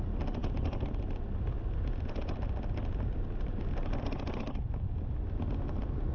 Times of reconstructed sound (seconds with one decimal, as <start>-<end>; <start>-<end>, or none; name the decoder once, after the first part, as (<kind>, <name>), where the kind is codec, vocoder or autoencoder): none